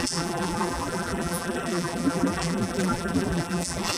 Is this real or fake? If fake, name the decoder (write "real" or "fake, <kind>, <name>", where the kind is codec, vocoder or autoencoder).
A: fake, vocoder, BigVGAN v2